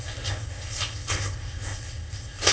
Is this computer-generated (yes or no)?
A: yes